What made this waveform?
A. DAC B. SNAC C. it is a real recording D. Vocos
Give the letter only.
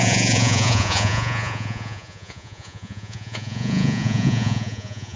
D